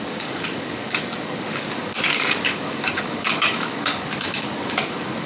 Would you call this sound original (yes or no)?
no